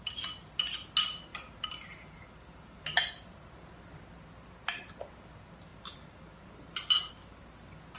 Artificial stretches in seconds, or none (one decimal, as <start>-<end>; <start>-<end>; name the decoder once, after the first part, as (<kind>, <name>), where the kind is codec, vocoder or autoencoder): 1.3-3.1 (vocoder, BigVGAN v2); 5.7-7.1